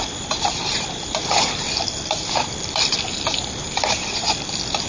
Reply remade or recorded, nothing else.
recorded